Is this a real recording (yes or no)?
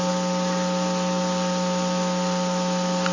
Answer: yes